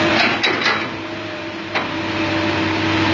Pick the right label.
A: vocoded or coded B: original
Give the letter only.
B